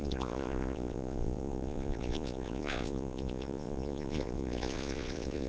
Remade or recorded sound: remade